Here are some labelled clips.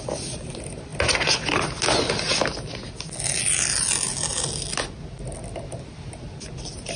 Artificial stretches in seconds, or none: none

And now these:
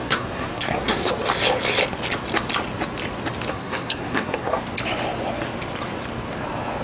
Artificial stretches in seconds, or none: 0.0-1.1 (codec, SNAC); 3.5-4.6

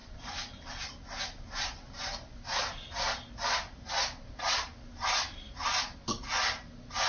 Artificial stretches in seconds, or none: none

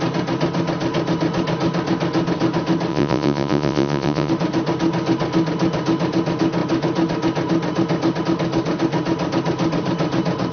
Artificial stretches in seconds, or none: 2.9-4.3 (vocoder, Vocos)

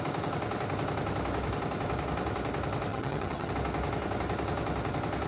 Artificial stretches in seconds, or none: 2.9-3.5 (vocoder, HiFi-GAN)

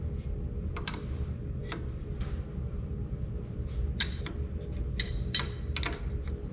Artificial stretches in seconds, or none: none

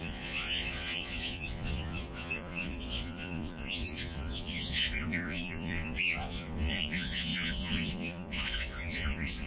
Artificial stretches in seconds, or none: 0.0-9.5 (vocoder, Vocos)